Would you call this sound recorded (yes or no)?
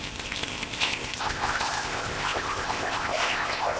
no